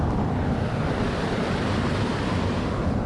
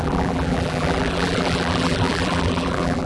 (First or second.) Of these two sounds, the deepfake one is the second